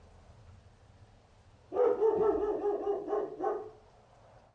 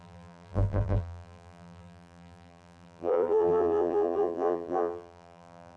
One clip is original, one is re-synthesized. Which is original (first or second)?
first